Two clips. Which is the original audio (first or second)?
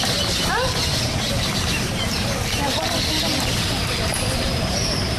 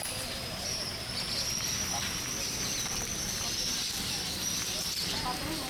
second